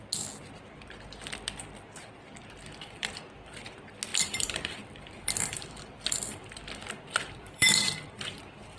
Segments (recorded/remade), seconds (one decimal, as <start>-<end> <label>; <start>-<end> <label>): 0.0-2.6 recorded; 2.6-3.6 remade; 3.6-4.1 recorded; 4.1-8.8 remade